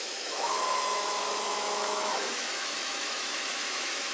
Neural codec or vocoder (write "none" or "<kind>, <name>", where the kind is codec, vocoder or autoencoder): autoencoder, DAC-VAE